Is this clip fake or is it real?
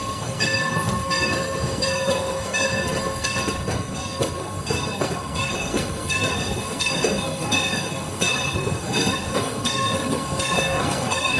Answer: fake